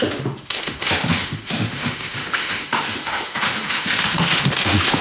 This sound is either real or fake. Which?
fake